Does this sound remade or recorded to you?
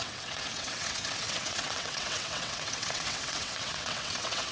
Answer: remade